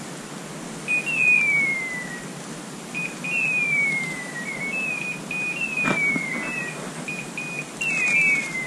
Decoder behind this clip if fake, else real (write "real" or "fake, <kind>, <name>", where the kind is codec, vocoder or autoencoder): real